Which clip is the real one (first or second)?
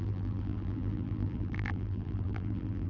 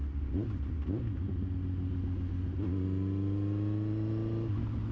second